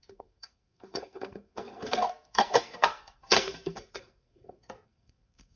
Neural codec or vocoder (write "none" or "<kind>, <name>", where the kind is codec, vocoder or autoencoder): codec, SNAC